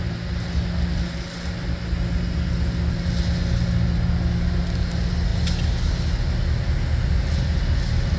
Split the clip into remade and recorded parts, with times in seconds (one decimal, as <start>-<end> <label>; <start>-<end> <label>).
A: 0.0-8.2 recorded